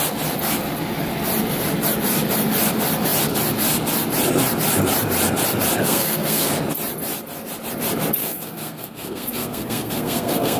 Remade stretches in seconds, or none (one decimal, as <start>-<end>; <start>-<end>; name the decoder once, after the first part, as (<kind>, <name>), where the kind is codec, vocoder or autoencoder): 5.8-6.5 (codec, SNAC); 8.2-10.6